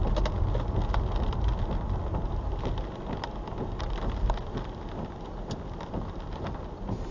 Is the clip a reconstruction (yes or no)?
no